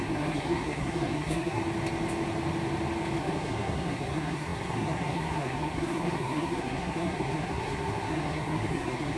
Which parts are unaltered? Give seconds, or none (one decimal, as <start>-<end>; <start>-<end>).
1.6-3.2